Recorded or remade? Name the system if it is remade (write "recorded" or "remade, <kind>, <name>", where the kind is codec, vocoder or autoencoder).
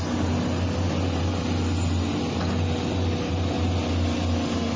recorded